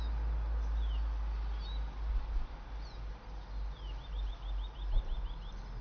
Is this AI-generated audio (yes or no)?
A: no